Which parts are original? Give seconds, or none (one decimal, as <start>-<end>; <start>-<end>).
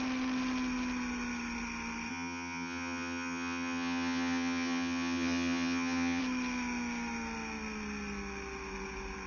0.0-2.1; 6.2-9.3